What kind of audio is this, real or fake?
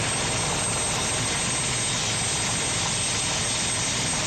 real